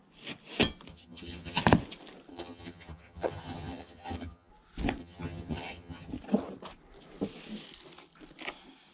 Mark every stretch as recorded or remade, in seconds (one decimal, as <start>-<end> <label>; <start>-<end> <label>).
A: 0.0-0.9 recorded; 0.9-1.6 remade; 1.6-2.3 recorded; 2.3-4.5 remade; 4.5-5.0 recorded; 5.0-6.1 remade; 6.1-8.9 recorded